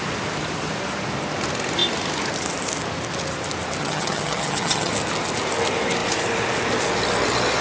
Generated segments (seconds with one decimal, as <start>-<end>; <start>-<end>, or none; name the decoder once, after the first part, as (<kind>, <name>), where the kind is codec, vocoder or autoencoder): 3.8-4.9 (vocoder, HiFi-GAN)